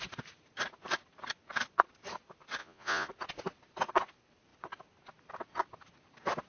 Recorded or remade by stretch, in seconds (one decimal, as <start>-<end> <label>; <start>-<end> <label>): 0.0-2.6 recorded; 2.6-3.1 remade; 3.1-6.5 recorded